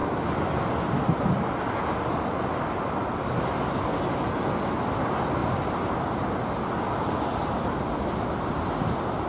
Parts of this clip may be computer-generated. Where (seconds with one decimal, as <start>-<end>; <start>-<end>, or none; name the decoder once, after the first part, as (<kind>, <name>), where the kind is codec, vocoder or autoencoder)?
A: none